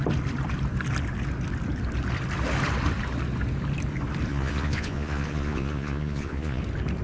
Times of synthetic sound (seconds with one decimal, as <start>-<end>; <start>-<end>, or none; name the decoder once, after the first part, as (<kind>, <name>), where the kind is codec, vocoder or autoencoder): 4.3-6.6 (vocoder, Vocos)